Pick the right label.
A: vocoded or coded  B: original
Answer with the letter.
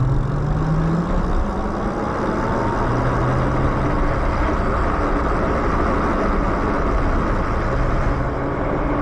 B